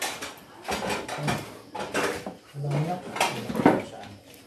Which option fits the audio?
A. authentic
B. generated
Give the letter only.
A